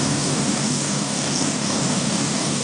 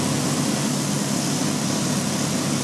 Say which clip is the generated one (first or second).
first